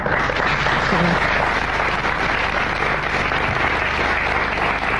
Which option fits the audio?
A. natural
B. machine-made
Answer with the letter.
A